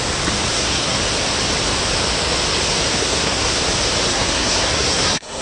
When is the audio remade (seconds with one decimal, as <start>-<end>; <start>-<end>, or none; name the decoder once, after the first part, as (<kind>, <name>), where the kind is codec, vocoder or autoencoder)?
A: 0.5-1.0 (codec, SNAC); 3.0-3.6; 4.1-5.4